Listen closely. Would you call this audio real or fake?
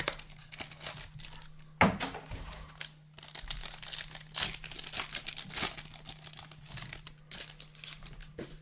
real